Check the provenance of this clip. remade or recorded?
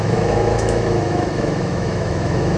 remade